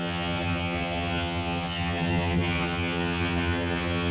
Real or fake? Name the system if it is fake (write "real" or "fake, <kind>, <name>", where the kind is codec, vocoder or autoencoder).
fake, vocoder, HiFi-GAN